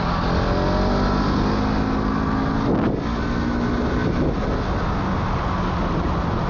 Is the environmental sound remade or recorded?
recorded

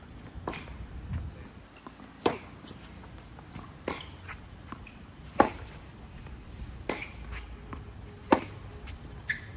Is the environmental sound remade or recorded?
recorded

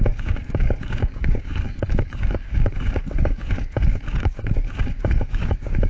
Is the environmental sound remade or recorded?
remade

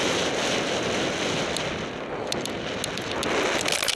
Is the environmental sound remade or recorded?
recorded